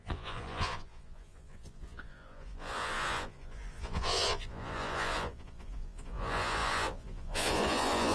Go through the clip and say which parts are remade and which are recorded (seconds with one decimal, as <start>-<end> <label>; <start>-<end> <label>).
0.0-8.1 remade